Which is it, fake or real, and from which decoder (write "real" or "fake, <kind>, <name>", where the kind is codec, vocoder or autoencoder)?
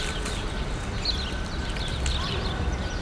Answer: real